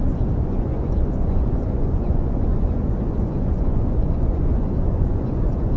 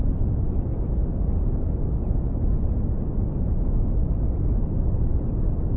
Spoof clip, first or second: first